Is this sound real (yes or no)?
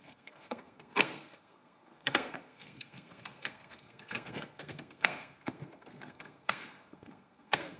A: no